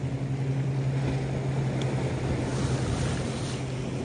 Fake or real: real